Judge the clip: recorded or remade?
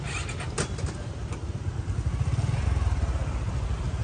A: recorded